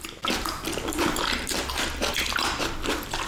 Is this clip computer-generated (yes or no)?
no